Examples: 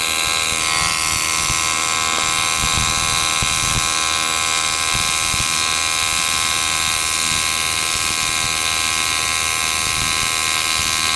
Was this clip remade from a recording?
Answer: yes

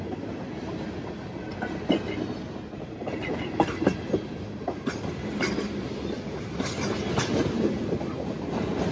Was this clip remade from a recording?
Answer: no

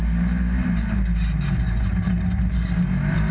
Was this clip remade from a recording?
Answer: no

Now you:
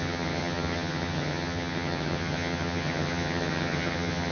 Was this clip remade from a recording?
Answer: yes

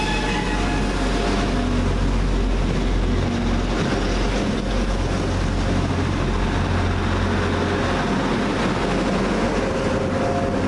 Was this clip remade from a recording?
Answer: no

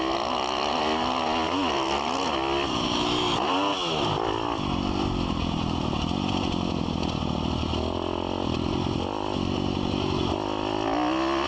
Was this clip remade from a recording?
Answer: no